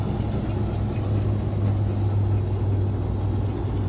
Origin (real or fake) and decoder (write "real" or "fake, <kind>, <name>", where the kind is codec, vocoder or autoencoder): real